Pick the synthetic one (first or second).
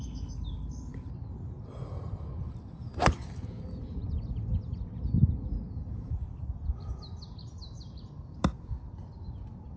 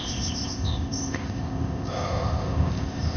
second